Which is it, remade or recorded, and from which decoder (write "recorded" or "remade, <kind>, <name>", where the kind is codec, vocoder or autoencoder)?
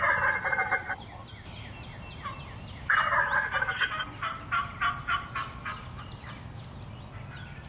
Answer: recorded